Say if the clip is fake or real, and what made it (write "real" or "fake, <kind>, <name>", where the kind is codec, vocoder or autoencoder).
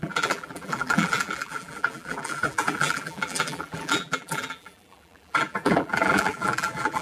fake, vocoder, BigVGAN v2